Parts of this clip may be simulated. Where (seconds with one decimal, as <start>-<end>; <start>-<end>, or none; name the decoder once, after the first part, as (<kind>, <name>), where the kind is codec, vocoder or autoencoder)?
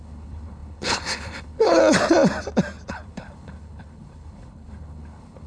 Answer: 0.0-1.8 (codec, HILCodec); 2.9-5.5